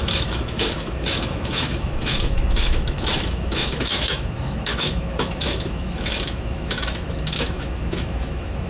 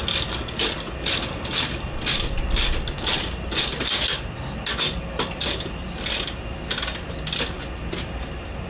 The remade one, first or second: first